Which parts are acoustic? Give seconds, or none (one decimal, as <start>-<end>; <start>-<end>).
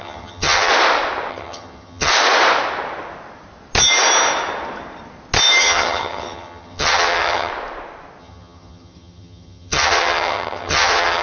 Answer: 0.7-1.3; 2.1-5.6; 7.5-8.2